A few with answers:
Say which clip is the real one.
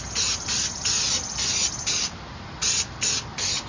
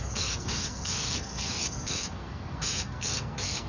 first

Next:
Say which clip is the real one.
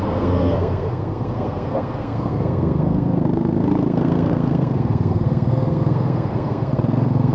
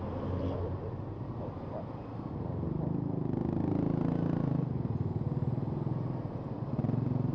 second